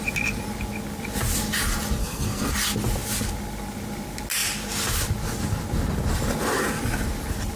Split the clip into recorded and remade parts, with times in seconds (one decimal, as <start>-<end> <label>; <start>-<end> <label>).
0.0-2.0 recorded; 2.0-2.5 remade; 2.5-7.6 recorded

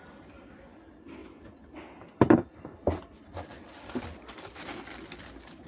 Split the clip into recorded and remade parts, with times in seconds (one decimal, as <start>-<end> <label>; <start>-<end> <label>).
0.0-5.7 recorded

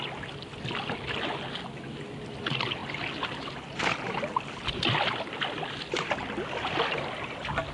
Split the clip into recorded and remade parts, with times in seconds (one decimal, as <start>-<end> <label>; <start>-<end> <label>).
0.0-7.7 recorded

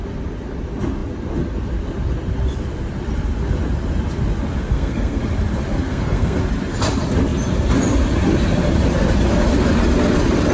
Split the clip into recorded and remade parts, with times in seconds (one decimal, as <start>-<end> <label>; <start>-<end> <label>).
0.0-4.6 recorded; 4.6-5.2 remade; 5.2-5.9 recorded; 5.9-6.4 remade; 6.4-10.5 recorded

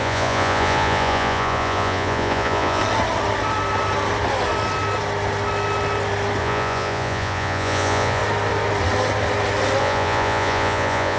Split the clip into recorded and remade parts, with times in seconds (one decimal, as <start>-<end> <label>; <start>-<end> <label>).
0.0-2.8 remade; 2.8-6.4 recorded; 6.4-8.2 remade; 8.2-9.8 recorded; 9.8-11.2 remade

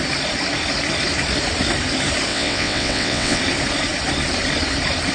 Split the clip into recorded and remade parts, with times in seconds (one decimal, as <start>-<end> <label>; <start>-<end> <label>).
0.0-2.3 recorded; 2.3-3.4 remade; 3.4-5.1 recorded